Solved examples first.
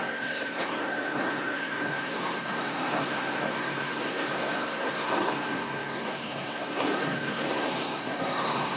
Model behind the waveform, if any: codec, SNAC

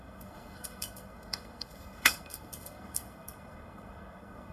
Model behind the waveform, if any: codec, SNAC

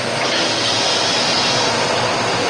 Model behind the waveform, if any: none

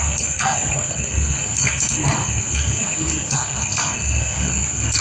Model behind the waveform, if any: codec, SNAC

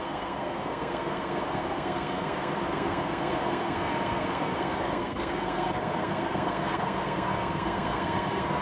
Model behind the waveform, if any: codec, SNAC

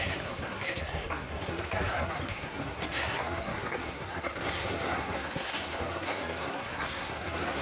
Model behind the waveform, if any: codec, SNAC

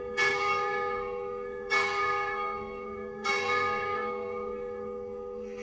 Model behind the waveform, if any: codec, SNAC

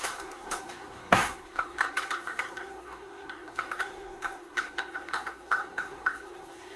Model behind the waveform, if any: codec, SNAC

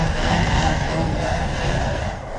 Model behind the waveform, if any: codec, SNAC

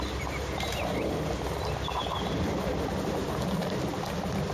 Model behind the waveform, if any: none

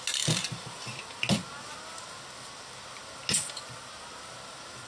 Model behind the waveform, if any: none